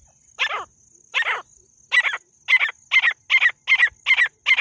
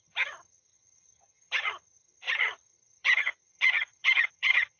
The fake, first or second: second